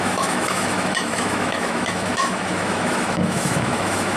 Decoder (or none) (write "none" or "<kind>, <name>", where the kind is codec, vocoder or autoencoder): autoencoder, DAC-VAE